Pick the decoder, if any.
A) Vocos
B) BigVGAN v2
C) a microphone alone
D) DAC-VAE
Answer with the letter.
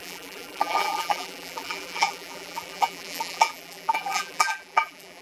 B